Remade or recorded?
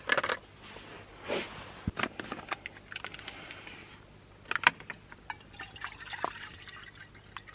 recorded